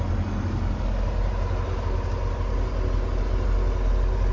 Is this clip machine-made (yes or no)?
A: no